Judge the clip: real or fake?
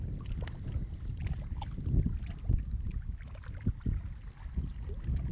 real